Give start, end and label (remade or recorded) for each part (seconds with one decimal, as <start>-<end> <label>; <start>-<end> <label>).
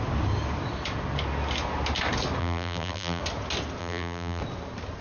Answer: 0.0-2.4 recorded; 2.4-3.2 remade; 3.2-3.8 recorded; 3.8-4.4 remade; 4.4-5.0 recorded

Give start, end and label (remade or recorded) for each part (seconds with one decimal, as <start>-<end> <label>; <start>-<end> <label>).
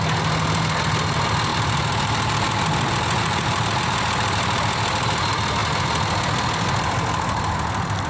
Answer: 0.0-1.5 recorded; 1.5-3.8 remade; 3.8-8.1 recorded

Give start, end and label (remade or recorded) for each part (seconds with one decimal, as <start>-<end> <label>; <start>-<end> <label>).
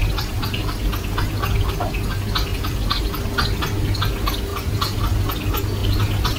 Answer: 0.0-0.8 remade; 0.8-2.5 recorded; 2.5-3.0 remade; 3.0-5.8 recorded; 5.8-6.4 remade